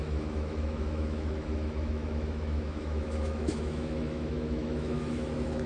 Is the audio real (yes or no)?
no